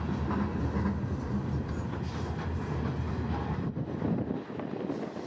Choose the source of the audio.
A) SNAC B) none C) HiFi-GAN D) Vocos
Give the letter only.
B